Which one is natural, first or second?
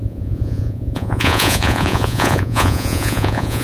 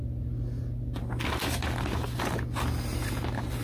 second